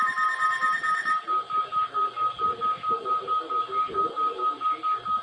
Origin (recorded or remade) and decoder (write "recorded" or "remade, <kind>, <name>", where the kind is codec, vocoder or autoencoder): recorded